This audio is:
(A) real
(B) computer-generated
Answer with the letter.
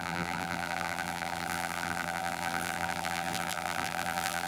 B